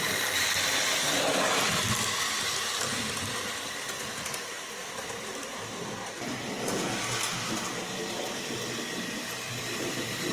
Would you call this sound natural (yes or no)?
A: no